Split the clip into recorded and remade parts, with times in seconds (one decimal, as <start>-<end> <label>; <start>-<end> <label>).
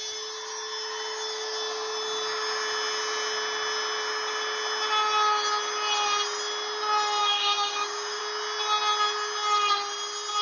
0.0-7.2 recorded; 7.2-8.2 remade; 8.2-10.4 recorded